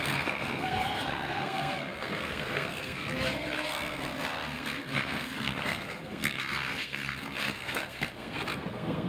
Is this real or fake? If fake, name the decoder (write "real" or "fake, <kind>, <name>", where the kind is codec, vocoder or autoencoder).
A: fake, codec, SNAC